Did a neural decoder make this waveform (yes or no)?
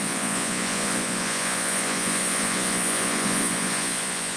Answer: yes